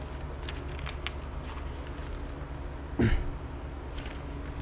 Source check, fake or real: real